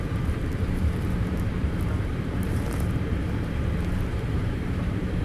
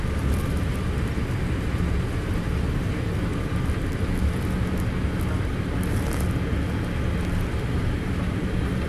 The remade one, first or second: first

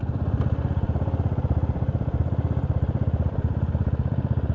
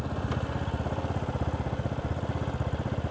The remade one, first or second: first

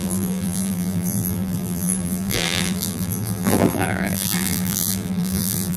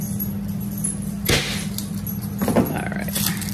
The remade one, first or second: first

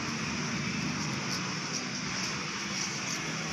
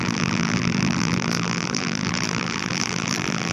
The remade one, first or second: second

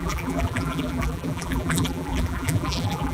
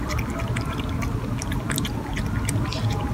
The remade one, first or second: first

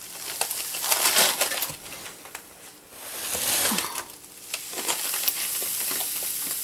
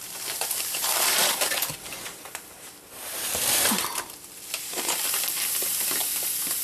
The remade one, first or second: second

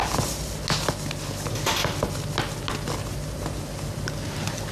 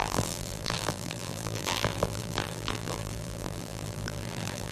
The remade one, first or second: second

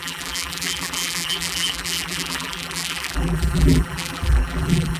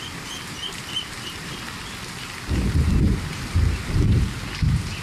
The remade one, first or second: first